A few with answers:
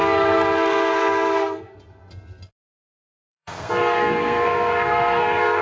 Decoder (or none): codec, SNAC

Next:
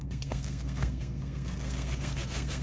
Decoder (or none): codec, SNAC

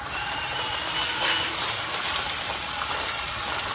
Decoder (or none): none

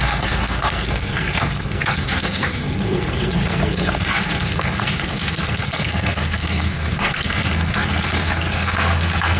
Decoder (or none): codec, SNAC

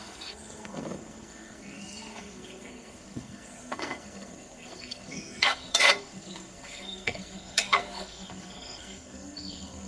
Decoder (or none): codec, SNAC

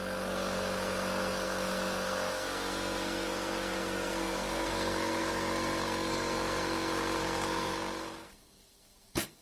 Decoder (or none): codec, SNAC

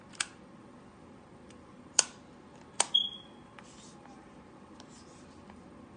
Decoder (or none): none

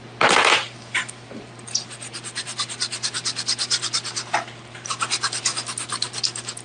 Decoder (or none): none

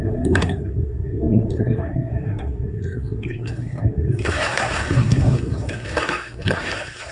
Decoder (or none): codec, SNAC